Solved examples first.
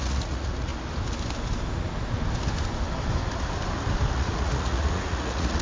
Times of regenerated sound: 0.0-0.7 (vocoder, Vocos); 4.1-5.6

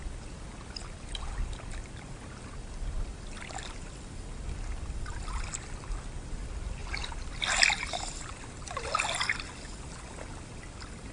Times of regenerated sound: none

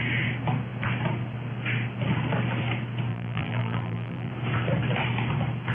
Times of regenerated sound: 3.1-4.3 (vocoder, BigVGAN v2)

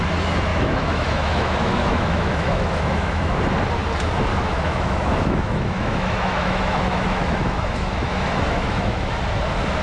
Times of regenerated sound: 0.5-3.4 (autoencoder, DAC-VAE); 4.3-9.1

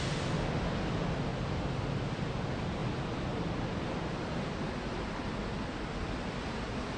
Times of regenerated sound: none

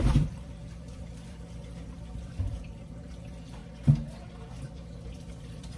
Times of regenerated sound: 0.0-3.6 (vocoder, BigVGAN v2); 4.5-5.8